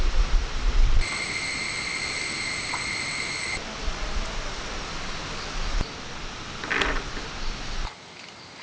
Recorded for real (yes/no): yes